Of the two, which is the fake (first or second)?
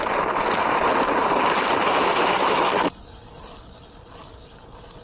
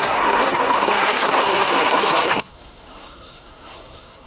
second